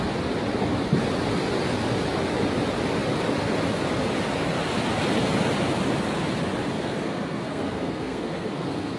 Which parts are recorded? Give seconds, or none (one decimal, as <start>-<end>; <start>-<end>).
0.0-6.7